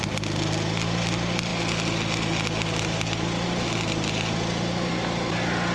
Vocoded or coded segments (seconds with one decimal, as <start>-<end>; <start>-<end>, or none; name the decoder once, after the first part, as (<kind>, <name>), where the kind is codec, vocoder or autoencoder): none